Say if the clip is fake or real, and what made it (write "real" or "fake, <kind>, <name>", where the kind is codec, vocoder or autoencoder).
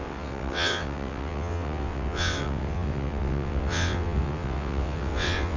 fake, vocoder, WaveNeXt